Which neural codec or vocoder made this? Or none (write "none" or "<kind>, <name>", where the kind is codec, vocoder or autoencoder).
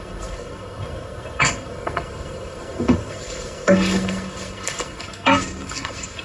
codec, SNAC